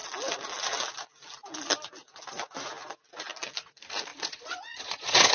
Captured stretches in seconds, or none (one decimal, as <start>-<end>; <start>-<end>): 0.0-4.1